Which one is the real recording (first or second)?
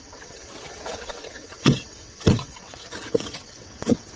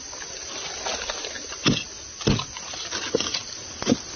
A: second